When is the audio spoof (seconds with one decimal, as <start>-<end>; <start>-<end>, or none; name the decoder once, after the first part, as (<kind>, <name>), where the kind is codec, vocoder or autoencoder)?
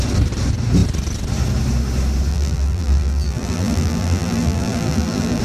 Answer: 2.3-5.4 (vocoder, BigVGAN v2)